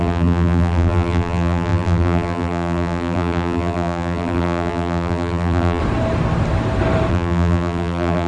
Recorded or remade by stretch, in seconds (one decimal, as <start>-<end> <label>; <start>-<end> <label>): 0.0-5.8 remade; 5.8-7.1 recorded; 7.1-8.3 remade